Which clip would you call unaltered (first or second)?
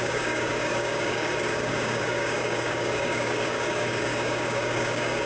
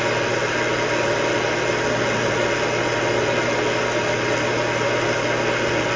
second